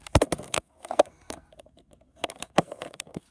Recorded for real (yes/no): no